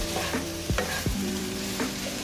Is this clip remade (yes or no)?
yes